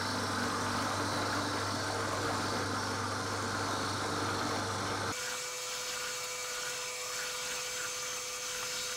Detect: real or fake real